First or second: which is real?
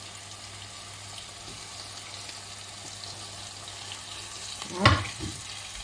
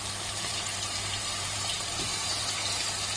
first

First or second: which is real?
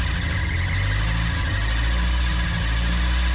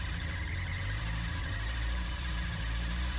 first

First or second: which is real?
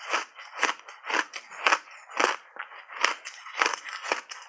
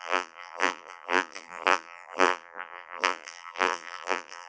first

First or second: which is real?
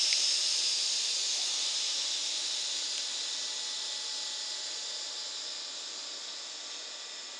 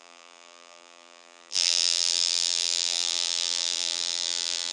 first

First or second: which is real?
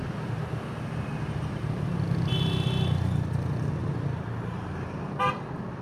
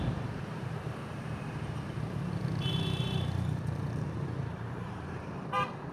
first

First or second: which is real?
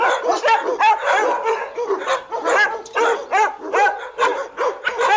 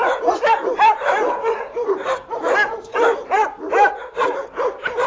first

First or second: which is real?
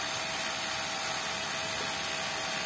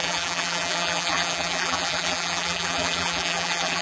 first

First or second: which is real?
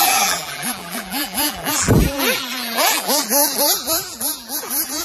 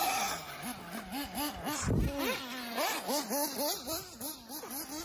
second